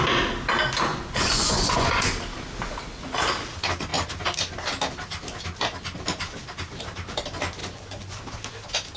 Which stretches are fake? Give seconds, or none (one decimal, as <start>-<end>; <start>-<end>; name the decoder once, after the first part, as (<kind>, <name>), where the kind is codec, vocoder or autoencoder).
0.9-2.1 (vocoder, Vocos); 7.6-8.2